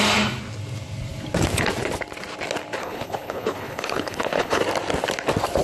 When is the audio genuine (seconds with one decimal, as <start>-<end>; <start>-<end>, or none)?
0.0-2.8; 4.6-5.6